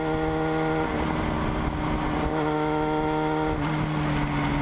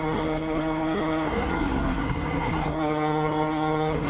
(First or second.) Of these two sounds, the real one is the first